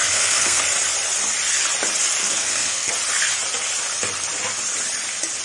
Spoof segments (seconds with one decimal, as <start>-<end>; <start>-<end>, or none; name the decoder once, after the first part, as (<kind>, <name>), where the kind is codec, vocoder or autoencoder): 0.0-0.6 (codec, SNAC); 2.2-2.9